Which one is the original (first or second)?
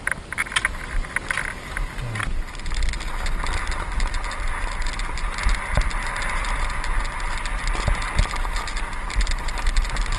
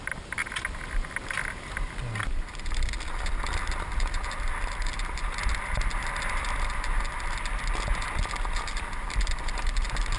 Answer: first